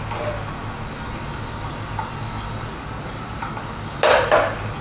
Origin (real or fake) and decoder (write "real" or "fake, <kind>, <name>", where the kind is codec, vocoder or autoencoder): real